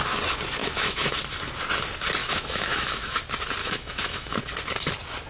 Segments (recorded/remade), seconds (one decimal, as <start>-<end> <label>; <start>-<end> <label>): 0.0-0.6 recorded; 0.6-1.2 remade; 1.2-2.2 recorded; 2.2-3.2 remade; 3.2-3.6 recorded; 3.6-4.4 remade; 4.4-5.3 recorded